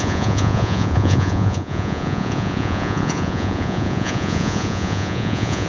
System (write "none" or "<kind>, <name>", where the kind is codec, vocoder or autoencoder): vocoder, Vocos